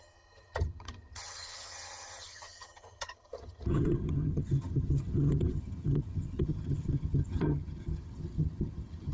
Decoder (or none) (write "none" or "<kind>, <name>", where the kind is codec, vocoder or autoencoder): vocoder, HiFi-GAN